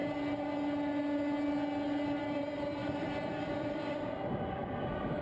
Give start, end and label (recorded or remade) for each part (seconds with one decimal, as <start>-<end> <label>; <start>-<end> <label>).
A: 0.0-2.2 recorded; 2.2-5.2 remade